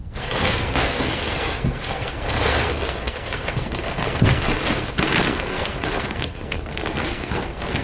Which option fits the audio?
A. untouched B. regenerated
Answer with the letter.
B